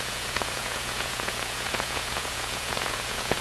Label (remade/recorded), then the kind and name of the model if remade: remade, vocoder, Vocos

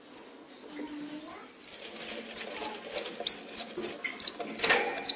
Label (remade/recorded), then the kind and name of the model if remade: recorded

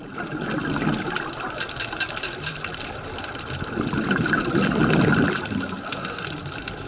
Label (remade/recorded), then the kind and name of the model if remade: remade, vocoder, BigVGAN v2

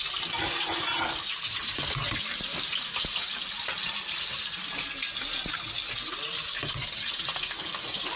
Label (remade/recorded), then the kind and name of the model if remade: recorded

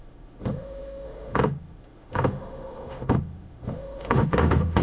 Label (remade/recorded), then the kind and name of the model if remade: remade, autoencoder, DAC-VAE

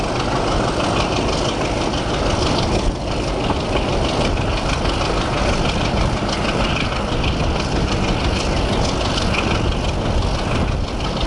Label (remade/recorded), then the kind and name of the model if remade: recorded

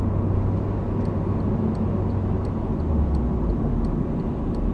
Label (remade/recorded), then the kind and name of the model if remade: recorded